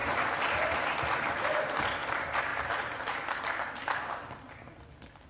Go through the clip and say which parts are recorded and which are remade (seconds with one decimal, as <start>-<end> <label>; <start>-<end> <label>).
0.0-5.3 recorded